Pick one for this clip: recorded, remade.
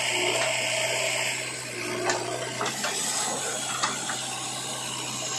recorded